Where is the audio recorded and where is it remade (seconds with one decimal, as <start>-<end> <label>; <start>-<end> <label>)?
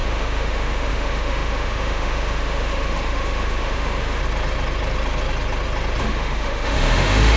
0.0-4.2 remade; 4.2-6.0 recorded; 6.0-7.4 remade